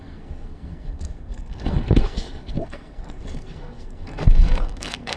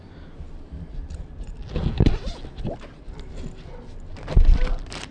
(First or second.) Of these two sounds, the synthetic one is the first